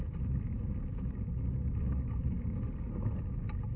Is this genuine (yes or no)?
yes